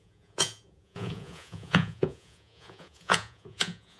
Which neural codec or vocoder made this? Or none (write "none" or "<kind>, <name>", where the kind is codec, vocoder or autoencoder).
vocoder, Vocos